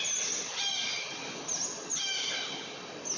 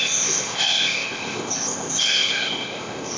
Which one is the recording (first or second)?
first